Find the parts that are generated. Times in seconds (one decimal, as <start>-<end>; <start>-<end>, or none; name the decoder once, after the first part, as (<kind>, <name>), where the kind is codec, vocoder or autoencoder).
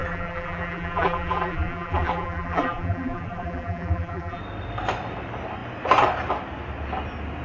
0.0-4.4 (vocoder, BigVGAN v2)